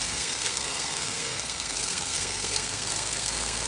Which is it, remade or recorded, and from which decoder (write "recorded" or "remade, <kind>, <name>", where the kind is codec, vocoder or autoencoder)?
remade, codec, SNAC